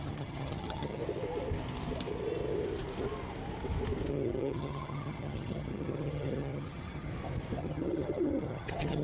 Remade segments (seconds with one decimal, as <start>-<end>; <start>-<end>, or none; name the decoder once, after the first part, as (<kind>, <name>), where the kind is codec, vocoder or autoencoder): 0.0-1.0 (vocoder, HiFi-GAN); 4.1-7.1; 7.6-9.0